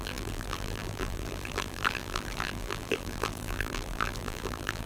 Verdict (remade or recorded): remade